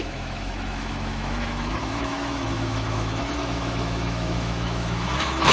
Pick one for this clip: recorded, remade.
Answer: remade